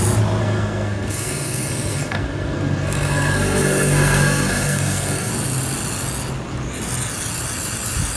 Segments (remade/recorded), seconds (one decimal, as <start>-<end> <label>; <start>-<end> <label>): 0.0-0.4 recorded; 0.4-5.3 remade; 5.3-8.2 recorded